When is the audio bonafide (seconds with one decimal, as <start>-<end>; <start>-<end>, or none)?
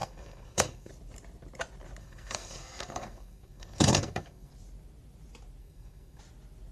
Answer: 0.9-2.0; 4.5-5.6; 6.2-6.7